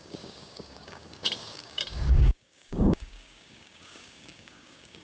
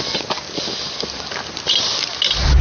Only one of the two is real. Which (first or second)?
second